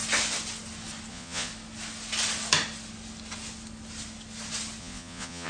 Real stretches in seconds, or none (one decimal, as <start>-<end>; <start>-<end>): 0.0-1.1; 1.5-4.8